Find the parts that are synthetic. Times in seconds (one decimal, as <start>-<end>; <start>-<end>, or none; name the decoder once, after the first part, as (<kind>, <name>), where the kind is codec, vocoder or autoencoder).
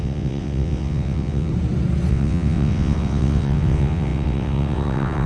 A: 0.0-1.5 (vocoder, WaveNeXt); 2.1-5.3